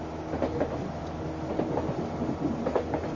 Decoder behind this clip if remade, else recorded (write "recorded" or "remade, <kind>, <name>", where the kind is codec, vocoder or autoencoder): recorded